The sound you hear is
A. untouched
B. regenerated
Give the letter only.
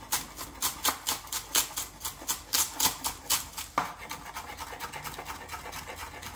A